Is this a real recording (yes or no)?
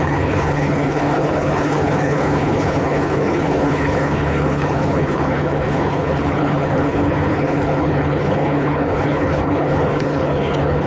no